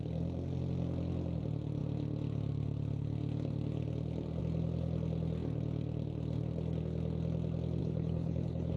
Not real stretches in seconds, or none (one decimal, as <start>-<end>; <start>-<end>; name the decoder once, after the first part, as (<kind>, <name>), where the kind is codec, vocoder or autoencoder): 7.8-8.8 (codec, HILCodec)